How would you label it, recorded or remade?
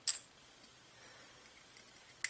recorded